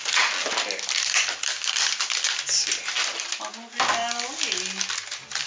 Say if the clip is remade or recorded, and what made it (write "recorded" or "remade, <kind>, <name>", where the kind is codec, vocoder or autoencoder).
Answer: recorded